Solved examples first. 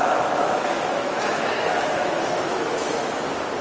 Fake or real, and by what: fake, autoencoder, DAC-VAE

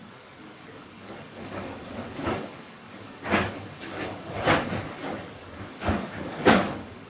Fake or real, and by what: fake, codec, DAC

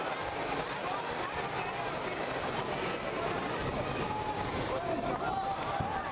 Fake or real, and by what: real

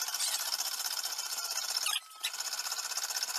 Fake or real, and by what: real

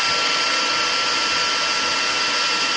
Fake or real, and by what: real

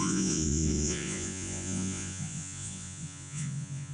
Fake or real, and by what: fake, vocoder, Vocos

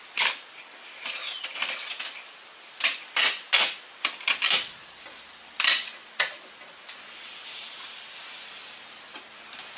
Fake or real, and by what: real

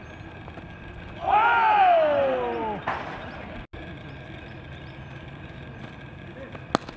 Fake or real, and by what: real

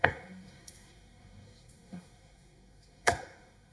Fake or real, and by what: fake, codec, SNAC